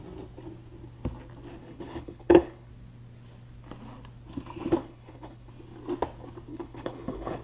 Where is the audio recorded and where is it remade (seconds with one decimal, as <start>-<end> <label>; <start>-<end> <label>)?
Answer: 0.0-1.6 recorded; 1.6-2.7 remade; 2.7-4.8 recorded; 4.8-5.5 remade; 5.5-6.5 recorded; 6.5-7.4 remade